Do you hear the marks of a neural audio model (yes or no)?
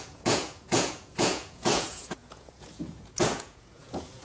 yes